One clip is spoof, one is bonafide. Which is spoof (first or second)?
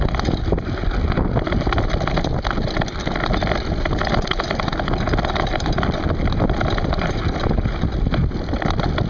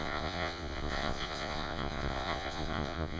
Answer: second